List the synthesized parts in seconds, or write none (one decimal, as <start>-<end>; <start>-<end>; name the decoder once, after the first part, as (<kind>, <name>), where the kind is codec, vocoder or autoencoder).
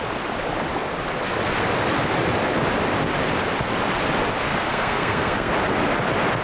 4.5-5.5 (codec, SNAC)